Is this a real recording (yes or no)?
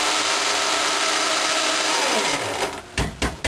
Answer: yes